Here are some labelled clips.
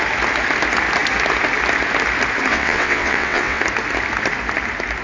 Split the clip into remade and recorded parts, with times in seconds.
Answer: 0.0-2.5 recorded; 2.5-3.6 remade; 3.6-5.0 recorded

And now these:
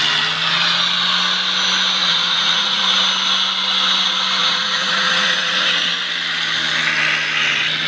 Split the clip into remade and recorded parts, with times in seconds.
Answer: 0.0-2.0 recorded; 2.0-2.8 remade; 2.8-4.4 recorded; 4.4-5.9 remade; 5.9-7.9 recorded

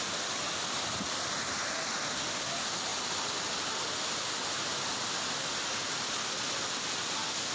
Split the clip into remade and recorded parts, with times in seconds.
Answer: 0.0-7.5 recorded